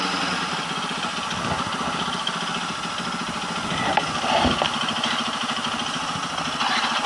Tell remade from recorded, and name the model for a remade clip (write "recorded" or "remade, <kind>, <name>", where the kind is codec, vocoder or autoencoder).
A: recorded